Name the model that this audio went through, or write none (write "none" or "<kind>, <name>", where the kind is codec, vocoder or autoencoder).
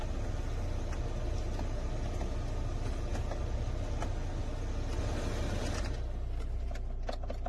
none